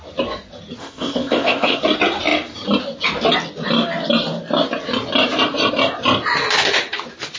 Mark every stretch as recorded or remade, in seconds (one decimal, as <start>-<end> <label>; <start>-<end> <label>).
0.0-0.8 recorded; 0.8-1.8 remade; 1.8-7.4 recorded